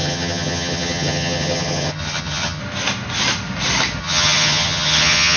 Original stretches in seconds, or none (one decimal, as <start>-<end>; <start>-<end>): 2.6-4.0